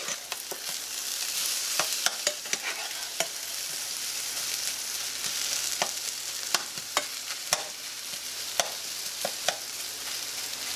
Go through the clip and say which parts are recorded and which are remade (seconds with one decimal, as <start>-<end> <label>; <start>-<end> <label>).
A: 0.0-5.0 remade; 5.0-5.7 recorded; 5.7-10.8 remade